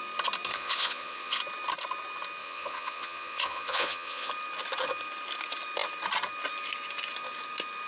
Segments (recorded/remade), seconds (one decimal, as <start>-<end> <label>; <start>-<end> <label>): 0.0-0.5 recorded; 0.5-1.4 remade; 1.4-2.4 recorded; 2.4-4.3 remade; 4.3-7.9 recorded